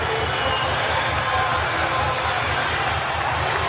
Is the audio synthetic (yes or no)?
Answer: no